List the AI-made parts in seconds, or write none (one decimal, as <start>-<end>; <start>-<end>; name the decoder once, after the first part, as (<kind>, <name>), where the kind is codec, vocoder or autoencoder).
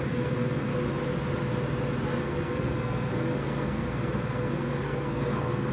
0.0-0.7 (codec, SNAC); 2.2-5.7